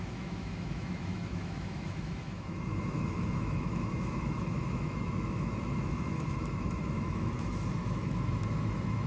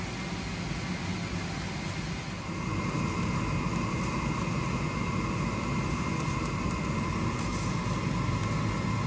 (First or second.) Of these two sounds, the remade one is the first